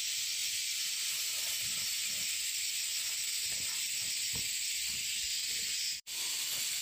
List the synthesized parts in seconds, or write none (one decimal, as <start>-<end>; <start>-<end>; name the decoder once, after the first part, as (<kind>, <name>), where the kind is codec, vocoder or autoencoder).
5.4-6.8 (vocoder, BigVGAN v2)